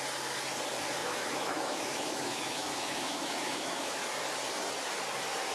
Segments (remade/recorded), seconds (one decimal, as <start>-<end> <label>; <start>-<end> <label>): 0.0-1.0 recorded; 1.0-4.1 remade; 4.1-5.5 recorded